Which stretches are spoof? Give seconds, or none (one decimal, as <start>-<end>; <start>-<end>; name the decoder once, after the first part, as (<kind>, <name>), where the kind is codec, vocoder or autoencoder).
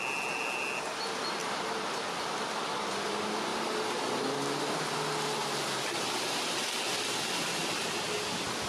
1.4-2.0 (vocoder, BigVGAN v2)